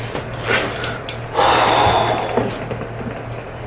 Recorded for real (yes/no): yes